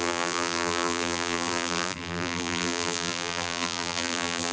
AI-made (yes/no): yes